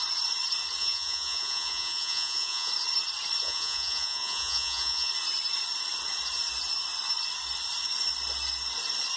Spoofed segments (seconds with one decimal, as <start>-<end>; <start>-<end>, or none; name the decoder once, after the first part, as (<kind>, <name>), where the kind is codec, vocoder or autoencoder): 0.8-2.7 (vocoder, Vocos); 3.4-5.1